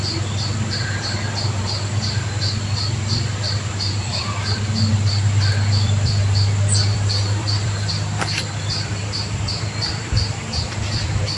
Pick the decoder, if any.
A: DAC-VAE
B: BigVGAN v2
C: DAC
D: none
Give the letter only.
B